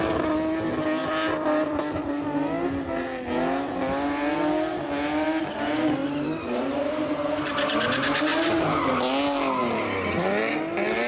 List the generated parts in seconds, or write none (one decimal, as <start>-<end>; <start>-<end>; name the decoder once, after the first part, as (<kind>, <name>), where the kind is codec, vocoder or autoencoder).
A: 1.0-1.8 (vocoder, BigVGAN v2); 6.0-6.9